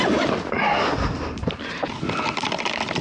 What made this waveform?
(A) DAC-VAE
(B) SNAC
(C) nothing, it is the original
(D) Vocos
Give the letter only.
C